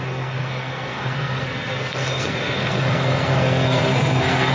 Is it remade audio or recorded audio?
remade